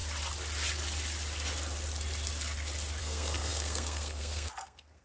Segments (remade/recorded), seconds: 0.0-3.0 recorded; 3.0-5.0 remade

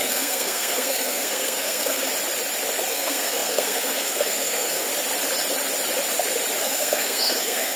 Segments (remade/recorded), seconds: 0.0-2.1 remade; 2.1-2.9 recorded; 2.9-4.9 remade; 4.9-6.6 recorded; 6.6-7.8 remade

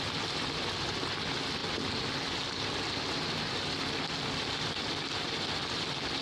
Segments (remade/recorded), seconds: 0.0-6.2 recorded